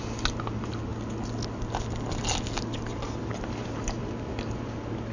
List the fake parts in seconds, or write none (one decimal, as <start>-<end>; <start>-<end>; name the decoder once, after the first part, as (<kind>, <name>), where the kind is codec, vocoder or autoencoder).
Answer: none